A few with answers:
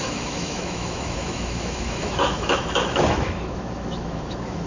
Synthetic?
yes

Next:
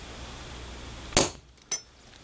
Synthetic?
no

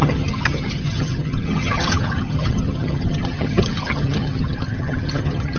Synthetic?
yes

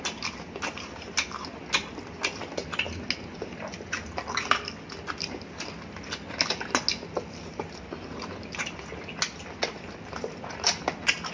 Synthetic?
no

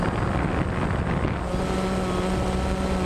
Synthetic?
no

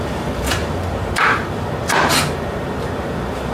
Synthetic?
yes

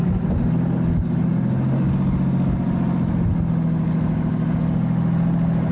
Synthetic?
no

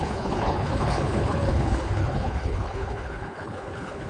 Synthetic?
yes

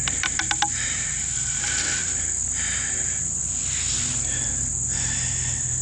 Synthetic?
no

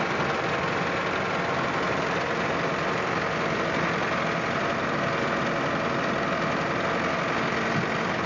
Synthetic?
no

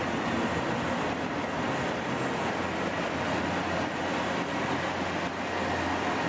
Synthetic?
no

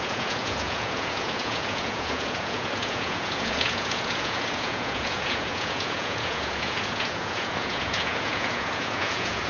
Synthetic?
yes